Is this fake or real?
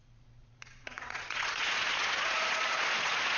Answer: fake